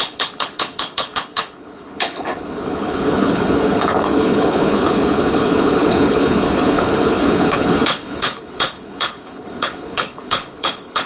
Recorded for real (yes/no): no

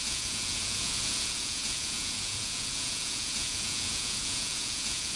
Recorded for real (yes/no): no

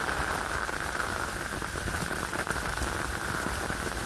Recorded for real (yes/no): yes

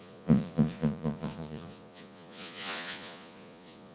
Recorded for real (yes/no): no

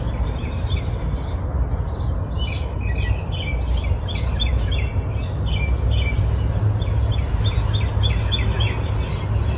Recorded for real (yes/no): yes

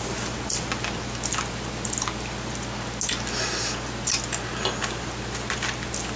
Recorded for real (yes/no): yes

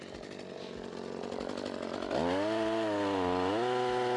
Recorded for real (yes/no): yes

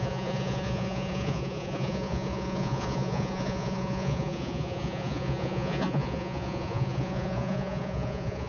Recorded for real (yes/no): no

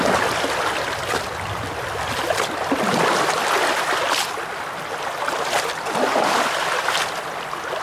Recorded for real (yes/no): yes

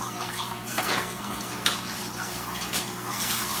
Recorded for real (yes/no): no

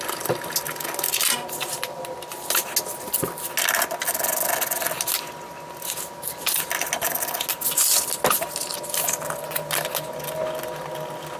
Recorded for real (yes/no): yes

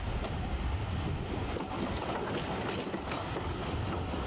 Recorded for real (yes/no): yes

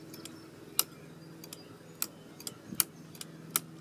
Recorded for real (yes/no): yes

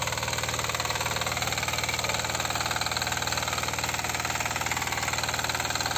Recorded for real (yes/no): yes